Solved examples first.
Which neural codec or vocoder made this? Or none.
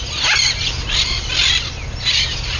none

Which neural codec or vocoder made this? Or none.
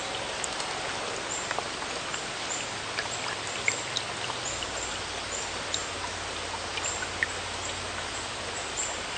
none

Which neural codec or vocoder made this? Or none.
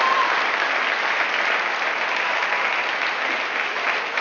none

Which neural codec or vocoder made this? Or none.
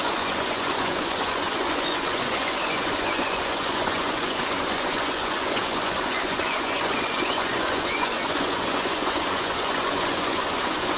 vocoder, Vocos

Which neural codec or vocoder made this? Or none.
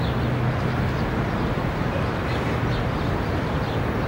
none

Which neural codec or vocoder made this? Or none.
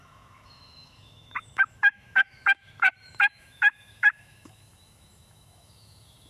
autoencoder, DAC-VAE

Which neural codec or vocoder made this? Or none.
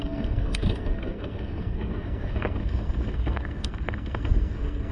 codec, SNAC